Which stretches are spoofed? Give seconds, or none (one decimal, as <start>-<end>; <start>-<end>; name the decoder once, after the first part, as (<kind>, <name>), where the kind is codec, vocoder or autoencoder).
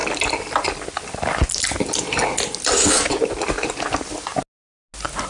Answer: none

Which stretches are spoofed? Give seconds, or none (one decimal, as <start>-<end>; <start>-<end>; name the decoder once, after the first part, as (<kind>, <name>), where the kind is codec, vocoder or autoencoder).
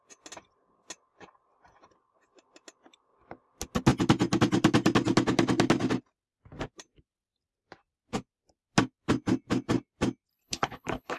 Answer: 10.3-11.2 (codec, HILCodec)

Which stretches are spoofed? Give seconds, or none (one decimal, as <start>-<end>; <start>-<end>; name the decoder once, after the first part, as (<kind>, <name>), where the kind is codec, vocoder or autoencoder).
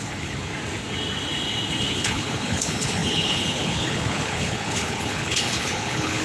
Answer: 0.0-0.5 (codec, HILCodec); 1.9-6.2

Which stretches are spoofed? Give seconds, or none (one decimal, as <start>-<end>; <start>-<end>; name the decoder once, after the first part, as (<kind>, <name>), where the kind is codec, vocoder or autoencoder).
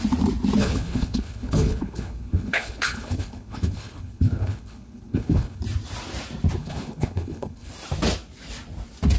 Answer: 0.6-5.6 (codec, HILCodec); 6.6-7.7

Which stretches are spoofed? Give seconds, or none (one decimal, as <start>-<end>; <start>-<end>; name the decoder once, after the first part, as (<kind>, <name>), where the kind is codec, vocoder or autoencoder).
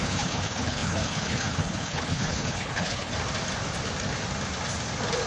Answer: 0.0-3.1 (codec, HILCodec)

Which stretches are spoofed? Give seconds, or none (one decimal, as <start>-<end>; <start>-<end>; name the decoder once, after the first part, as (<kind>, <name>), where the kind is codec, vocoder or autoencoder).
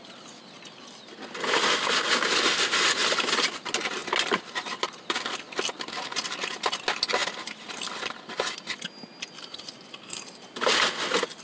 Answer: none